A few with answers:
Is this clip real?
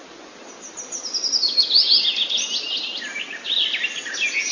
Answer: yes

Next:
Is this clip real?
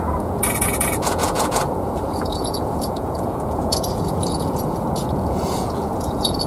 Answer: no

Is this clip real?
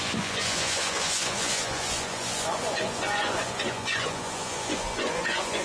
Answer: no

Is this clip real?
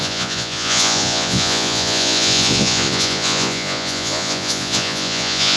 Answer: no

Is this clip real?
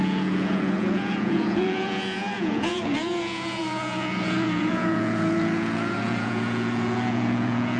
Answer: no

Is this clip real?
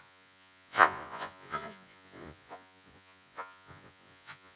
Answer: no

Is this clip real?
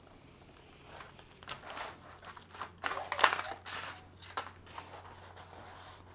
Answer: yes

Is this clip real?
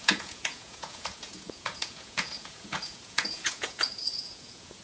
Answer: no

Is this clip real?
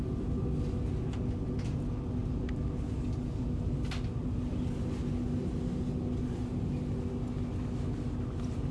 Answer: yes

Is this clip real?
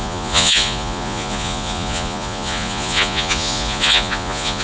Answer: no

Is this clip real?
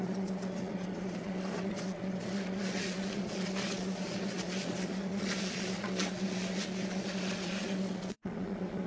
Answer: no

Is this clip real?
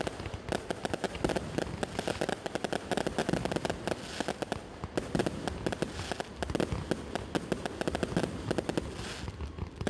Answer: yes